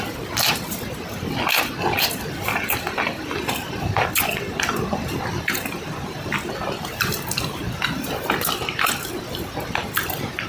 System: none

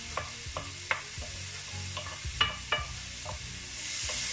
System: none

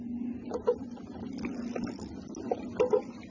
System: none